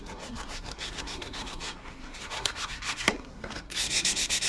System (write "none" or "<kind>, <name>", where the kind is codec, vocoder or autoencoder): codec, SNAC